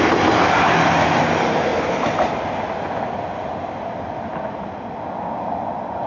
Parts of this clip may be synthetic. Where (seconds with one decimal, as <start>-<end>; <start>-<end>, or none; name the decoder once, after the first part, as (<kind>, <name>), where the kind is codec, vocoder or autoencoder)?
none